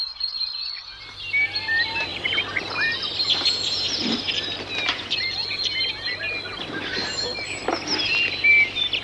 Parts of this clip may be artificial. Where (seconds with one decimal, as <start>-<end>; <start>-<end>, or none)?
none

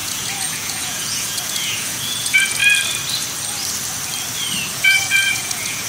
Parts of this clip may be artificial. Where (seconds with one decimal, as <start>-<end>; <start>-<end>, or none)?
0.0-2.6; 4.7-5.9

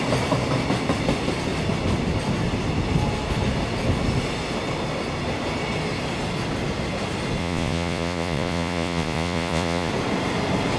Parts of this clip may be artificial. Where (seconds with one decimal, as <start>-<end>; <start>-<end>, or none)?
7.4-9.9